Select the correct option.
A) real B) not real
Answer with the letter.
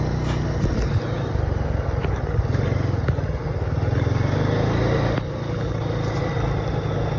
A